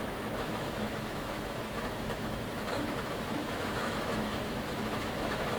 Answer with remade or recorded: remade